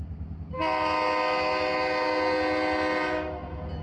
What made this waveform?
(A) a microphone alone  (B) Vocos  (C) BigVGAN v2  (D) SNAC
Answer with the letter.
A